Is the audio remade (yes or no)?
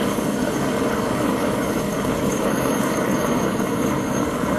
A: yes